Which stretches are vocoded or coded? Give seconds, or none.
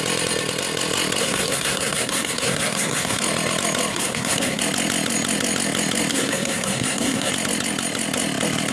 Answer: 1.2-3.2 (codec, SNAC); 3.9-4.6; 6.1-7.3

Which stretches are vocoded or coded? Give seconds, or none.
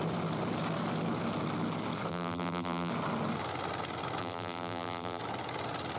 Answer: 2.1-2.9 (vocoder, BigVGAN v2); 4.2-5.2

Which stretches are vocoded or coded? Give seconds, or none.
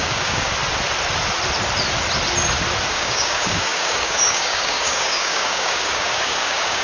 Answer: 0.0-0.5 (codec, DAC); 2.9-6.8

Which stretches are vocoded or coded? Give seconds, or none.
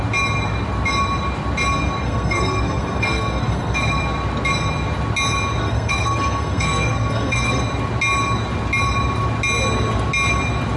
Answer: 2.0-4.0 (codec, SNAC); 5.6-7.6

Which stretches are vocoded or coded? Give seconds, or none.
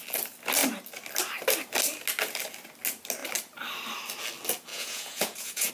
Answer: 4.7-5.7 (vocoder, Vocos)